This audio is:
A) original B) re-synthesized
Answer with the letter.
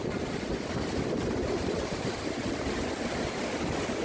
A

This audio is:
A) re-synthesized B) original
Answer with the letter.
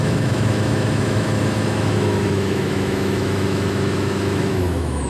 A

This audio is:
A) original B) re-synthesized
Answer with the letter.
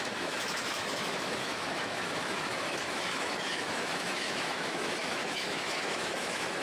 B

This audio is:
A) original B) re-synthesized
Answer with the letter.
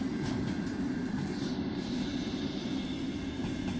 A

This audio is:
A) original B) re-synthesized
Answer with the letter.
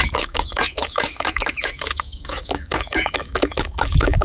B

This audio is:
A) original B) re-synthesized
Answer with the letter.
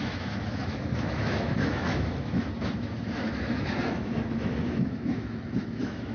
B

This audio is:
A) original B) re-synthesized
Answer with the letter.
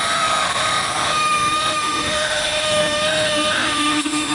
B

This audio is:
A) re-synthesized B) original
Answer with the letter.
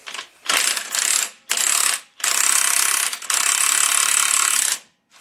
B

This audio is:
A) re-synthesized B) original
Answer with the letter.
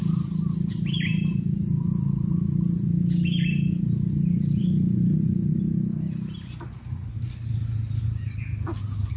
B